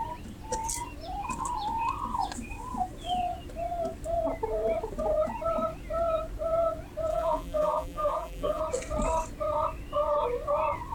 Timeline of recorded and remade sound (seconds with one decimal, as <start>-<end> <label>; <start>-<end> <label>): 0.0-7.1 recorded; 7.1-8.6 remade; 8.6-10.9 recorded